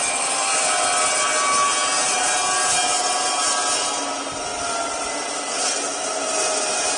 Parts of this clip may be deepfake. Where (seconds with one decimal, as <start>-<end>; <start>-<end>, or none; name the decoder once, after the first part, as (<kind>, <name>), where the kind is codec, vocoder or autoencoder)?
4.5-5.1 (vocoder, BigVGAN v2)